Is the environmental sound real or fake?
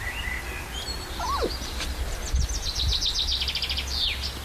real